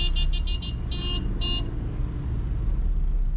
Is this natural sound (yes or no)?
yes